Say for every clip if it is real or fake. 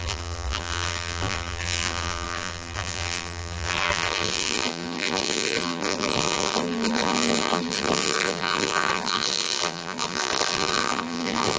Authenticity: fake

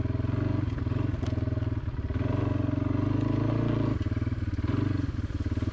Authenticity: real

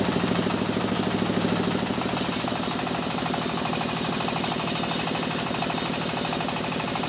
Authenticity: real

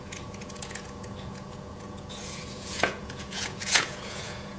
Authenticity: fake